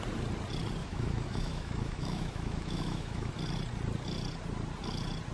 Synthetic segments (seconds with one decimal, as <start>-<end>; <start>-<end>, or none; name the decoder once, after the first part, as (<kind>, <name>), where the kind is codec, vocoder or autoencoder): 0.8-3.3 (autoencoder, DAC-VAE)